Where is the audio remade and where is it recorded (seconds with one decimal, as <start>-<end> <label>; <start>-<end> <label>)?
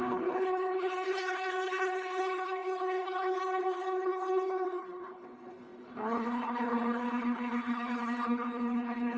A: 0.0-9.2 remade